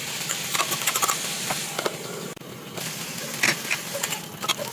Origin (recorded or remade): recorded